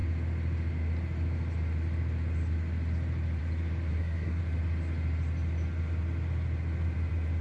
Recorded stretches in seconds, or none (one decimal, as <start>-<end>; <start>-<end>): 0.0-3.9; 4.4-7.4